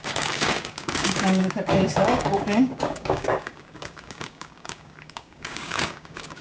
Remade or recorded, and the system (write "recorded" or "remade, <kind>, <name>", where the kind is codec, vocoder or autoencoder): remade, codec, DAC